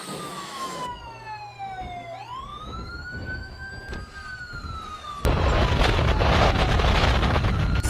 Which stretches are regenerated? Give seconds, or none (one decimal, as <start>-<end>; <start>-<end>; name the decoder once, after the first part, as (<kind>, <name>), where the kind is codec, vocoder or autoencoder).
0.0-1.0 (autoencoder, DAC-VAE); 2.5-3.7